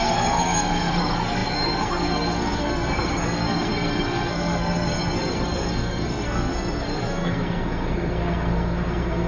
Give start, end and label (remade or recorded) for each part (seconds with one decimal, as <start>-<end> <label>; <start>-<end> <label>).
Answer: 0.0-9.3 remade